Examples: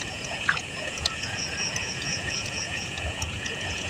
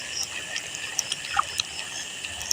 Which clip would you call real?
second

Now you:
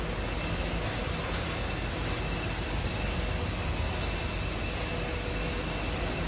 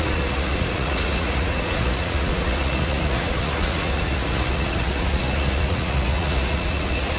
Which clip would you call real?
first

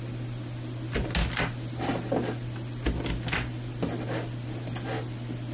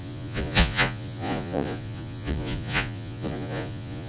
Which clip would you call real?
first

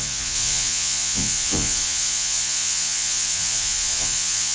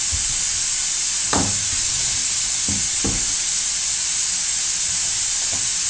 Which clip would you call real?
second